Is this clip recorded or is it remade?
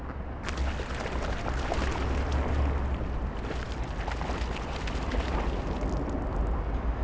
recorded